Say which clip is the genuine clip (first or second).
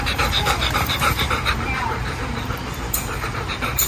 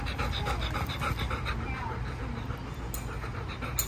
second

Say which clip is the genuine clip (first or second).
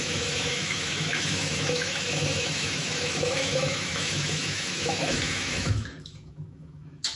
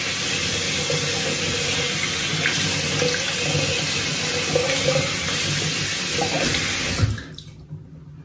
second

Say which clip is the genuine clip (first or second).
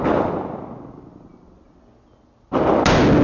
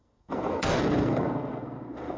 first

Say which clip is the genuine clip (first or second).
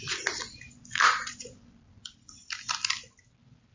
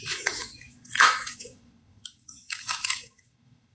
first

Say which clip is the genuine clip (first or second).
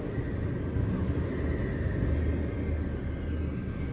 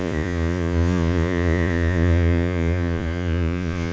first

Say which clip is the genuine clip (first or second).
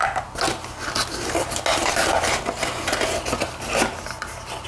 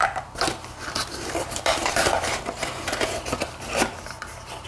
first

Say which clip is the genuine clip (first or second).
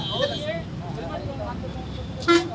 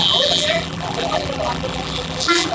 first